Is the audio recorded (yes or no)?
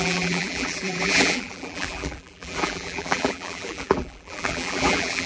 no